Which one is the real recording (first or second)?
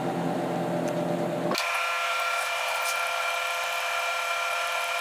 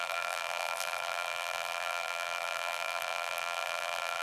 first